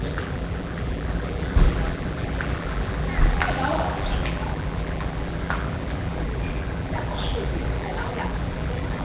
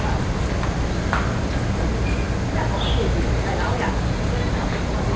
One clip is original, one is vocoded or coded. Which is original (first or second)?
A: second